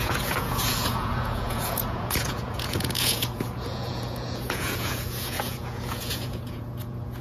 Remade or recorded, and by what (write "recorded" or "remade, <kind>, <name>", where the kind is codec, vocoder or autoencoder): remade, vocoder, Vocos